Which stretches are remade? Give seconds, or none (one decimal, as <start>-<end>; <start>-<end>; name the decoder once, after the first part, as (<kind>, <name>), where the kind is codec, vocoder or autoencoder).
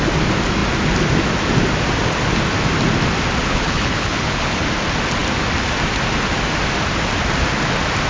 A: 3.4-4.6 (codec, HILCodec)